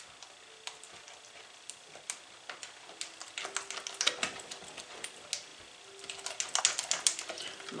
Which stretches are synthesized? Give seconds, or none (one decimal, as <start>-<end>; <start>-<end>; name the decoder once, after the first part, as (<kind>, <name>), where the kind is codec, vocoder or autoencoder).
none